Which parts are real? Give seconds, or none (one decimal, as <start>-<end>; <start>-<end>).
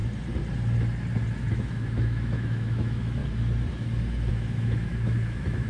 0.0-1.5; 3.2-4.3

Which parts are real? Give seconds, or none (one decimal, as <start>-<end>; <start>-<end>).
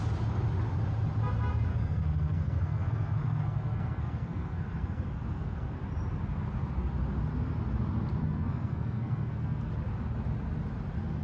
0.0-1.7; 5.7-8.2; 9.7-11.2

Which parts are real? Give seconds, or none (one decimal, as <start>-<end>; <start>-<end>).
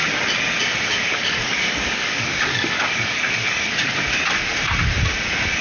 0.0-0.9; 3.6-5.6